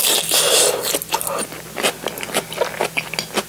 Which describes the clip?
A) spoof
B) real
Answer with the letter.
B